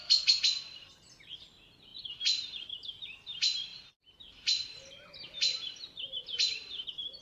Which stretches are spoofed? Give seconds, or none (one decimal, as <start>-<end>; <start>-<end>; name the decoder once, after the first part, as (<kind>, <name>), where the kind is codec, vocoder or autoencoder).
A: none